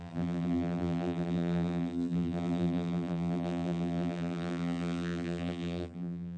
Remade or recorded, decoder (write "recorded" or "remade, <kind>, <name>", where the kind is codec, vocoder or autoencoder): remade, vocoder, BigVGAN v2